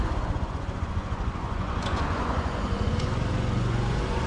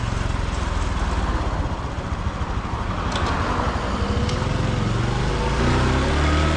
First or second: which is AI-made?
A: first